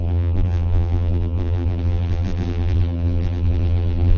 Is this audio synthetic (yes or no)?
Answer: yes